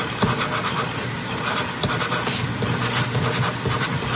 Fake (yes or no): no